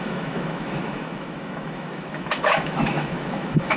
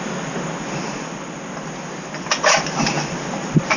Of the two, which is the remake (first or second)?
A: first